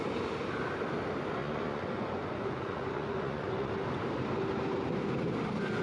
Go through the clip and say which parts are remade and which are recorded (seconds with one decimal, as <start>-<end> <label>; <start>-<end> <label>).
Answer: 0.0-1.4 recorded; 1.4-3.7 remade; 3.7-5.8 recorded